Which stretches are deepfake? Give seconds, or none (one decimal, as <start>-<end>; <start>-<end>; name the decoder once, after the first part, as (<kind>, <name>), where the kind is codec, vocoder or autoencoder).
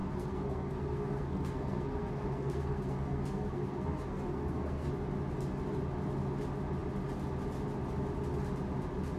0.0-4.9 (codec, SNAC)